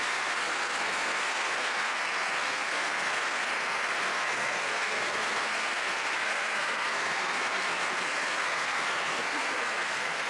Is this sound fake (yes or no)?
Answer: yes